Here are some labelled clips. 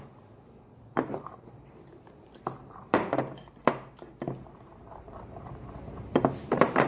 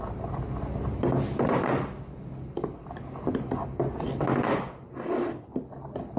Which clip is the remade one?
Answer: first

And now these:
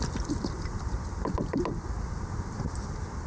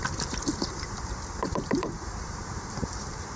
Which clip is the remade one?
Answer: second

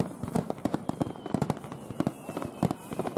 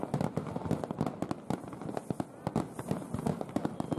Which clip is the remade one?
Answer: first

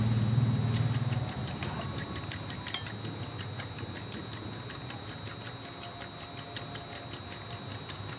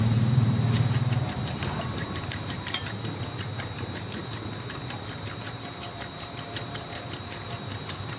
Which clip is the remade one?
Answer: second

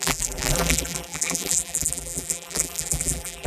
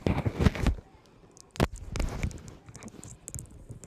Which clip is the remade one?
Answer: first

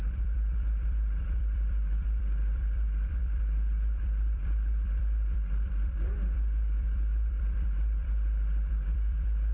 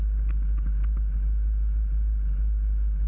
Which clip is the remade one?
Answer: first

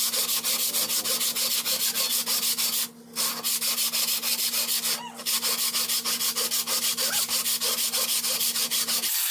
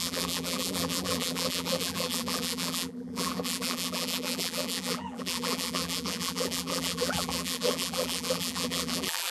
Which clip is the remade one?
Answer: second